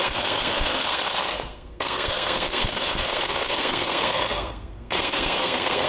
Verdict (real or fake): fake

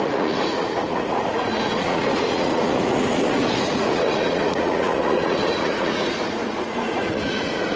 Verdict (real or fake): fake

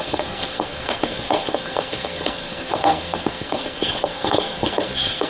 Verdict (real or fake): fake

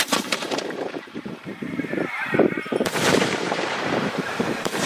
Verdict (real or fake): fake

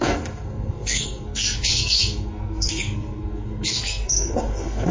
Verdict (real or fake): fake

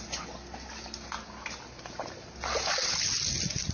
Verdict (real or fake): real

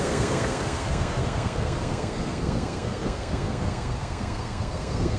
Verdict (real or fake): fake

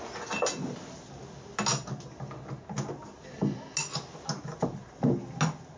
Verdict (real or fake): real